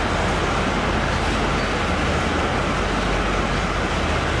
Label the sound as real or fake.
real